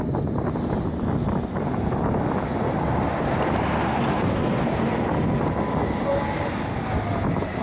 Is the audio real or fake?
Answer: real